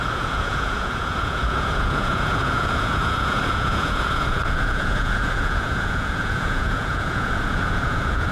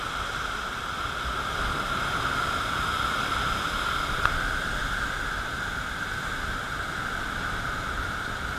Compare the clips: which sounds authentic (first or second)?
second